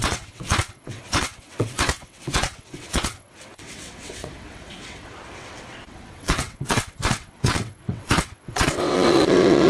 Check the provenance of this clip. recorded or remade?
remade